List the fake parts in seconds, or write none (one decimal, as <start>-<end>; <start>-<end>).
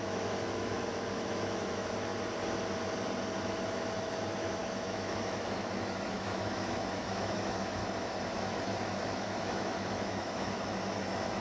0.0-2.1; 3.4-7.8; 8.3-11.4